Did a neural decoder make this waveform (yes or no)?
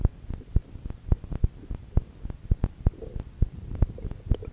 no